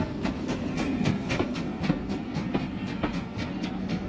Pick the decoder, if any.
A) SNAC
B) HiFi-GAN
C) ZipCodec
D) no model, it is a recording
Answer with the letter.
A